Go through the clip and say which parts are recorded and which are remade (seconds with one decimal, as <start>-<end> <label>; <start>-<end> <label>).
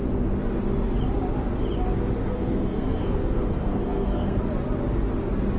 0.0-2.2 recorded; 2.2-4.4 remade; 4.4-5.6 recorded